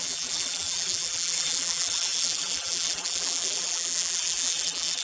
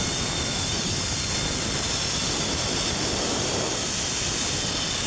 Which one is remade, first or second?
first